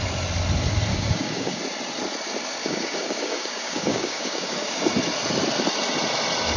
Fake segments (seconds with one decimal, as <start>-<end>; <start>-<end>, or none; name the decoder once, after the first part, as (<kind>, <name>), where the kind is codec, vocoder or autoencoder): 0.9-1.6 (codec, DAC); 2.6-4.8